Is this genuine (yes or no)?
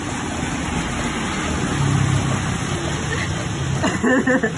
yes